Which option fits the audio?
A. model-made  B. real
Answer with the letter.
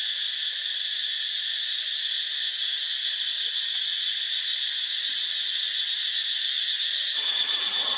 B